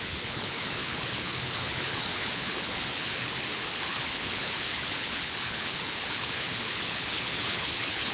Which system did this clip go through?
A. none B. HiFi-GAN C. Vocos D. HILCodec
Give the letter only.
D